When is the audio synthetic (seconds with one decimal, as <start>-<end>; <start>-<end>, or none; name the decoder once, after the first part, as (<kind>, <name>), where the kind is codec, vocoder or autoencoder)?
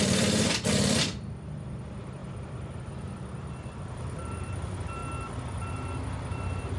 0.0-5.0 (vocoder, BigVGAN v2)